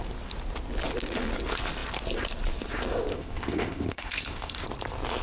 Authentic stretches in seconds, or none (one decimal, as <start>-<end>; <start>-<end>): 0.0-3.1; 4.6-5.2